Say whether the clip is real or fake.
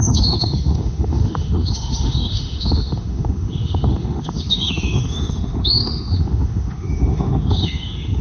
fake